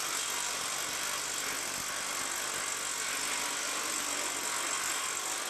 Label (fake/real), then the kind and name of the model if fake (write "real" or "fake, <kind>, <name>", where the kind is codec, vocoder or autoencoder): real